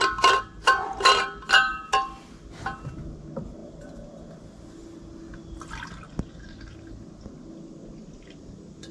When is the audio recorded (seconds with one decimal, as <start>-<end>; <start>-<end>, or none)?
0.0-8.9